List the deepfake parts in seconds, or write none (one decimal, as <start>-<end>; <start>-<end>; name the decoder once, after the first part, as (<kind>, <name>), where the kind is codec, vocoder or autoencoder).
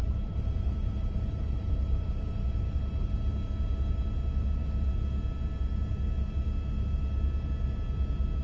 0.0-2.8 (vocoder, BigVGAN v2)